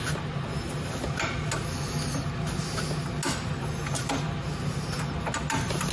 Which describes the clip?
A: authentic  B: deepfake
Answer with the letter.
A